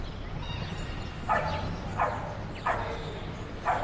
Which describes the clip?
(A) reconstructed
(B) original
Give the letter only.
B